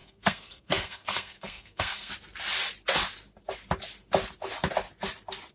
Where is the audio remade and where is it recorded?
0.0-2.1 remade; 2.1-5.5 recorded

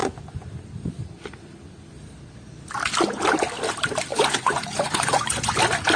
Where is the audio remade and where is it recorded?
0.0-4.1 recorded; 4.1-5.6 remade; 5.6-6.0 recorded

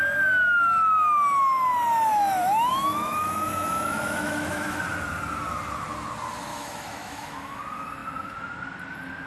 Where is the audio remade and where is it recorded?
0.0-2.1 recorded; 2.1-4.8 remade; 4.8-6.5 recorded; 6.5-7.6 remade; 7.6-9.3 recorded

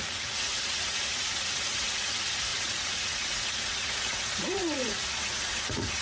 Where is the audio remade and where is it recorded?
0.0-6.0 remade

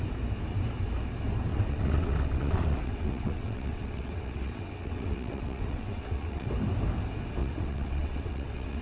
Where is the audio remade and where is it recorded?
0.0-1.5 recorded; 1.5-6.5 remade; 6.5-7.4 recorded; 7.4-8.8 remade